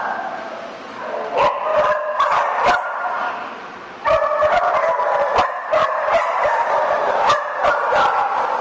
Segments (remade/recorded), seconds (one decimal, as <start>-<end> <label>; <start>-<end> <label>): 0.0-8.6 recorded